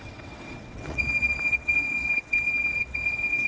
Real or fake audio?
fake